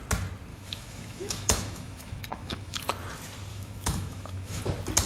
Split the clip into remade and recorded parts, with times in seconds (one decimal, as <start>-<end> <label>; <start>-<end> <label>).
0.0-0.5 recorded; 0.5-2.8 remade; 2.8-3.5 recorded; 3.5-4.6 remade; 4.6-5.1 recorded